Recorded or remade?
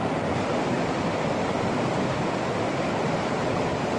recorded